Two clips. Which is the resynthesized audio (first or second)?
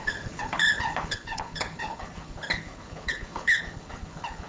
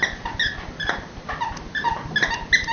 first